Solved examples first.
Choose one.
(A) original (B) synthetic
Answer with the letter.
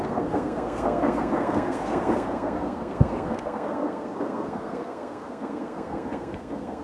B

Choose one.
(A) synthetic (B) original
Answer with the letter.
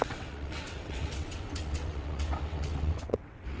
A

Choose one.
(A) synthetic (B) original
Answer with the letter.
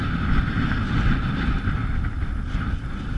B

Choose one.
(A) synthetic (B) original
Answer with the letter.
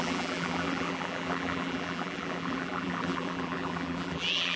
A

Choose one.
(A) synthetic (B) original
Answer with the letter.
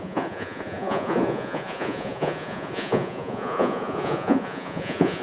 A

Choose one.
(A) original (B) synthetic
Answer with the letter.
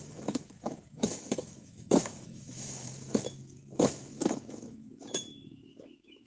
B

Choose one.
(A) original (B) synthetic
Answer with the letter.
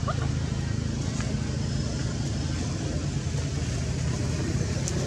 A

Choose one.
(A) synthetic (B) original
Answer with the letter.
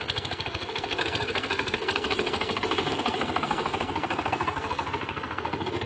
A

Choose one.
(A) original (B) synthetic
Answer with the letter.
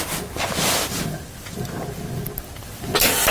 A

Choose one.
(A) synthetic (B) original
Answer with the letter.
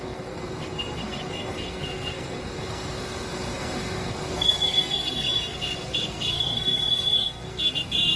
A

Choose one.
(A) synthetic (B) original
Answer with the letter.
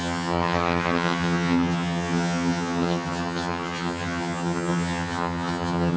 A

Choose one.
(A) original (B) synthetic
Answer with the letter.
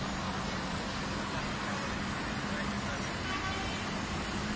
A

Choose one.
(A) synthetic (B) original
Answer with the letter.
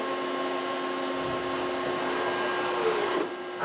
B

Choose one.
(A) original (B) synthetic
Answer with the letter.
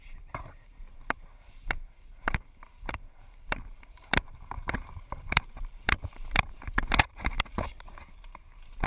B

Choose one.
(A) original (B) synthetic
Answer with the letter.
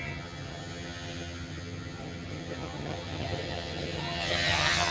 B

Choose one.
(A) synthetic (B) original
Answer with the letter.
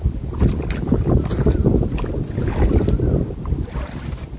B